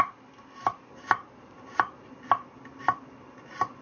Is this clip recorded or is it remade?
recorded